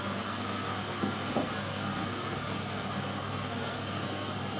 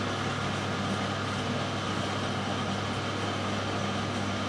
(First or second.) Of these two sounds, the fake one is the first